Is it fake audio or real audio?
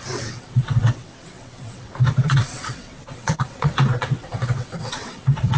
fake